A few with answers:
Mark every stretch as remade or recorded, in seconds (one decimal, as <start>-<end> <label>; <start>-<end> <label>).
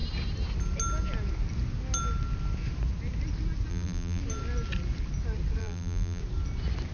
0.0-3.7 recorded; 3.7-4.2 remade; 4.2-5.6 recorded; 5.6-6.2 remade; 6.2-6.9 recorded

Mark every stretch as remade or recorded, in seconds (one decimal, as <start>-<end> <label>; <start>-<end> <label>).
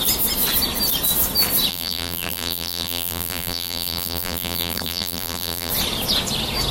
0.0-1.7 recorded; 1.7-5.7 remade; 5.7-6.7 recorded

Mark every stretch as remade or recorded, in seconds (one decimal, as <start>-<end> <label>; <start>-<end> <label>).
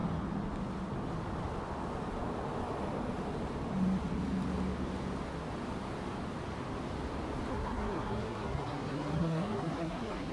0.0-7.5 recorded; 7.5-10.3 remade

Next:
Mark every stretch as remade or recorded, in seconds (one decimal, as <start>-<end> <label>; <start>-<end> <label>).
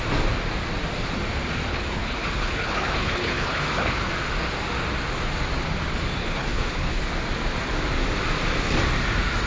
0.0-1.7 recorded; 1.7-4.1 remade; 4.1-6.2 recorded; 6.2-7.1 remade; 7.1-9.5 recorded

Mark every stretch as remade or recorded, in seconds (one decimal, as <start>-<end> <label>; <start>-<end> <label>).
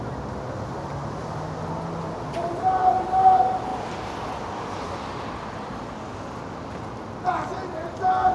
0.0-8.3 recorded